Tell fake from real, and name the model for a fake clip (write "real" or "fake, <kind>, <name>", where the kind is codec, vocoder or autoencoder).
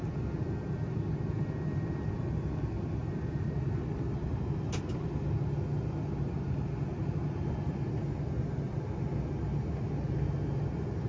real